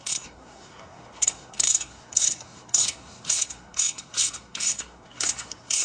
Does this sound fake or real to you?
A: fake